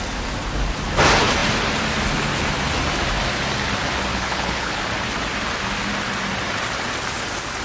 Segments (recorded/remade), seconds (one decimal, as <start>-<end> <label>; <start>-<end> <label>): 0.0-4.1 recorded; 4.1-4.8 remade; 4.8-7.6 recorded